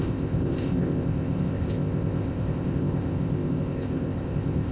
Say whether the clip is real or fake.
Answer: fake